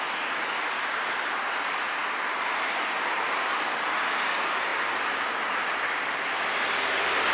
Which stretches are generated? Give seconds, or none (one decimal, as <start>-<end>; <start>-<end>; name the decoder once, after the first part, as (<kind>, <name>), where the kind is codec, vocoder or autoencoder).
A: none